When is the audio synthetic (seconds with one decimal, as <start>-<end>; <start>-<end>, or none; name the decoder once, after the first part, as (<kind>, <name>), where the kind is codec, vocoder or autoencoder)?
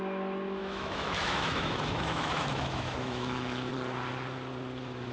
0.6-3.7 (autoencoder, DAC-VAE)